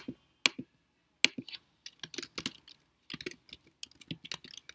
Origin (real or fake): real